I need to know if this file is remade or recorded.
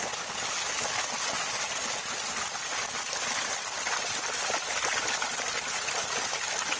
recorded